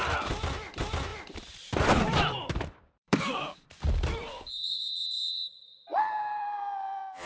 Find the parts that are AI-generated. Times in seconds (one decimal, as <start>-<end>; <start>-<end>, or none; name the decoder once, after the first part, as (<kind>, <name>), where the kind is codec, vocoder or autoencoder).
0.0-5.0 (vocoder, BigVGAN v2); 6.0-7.3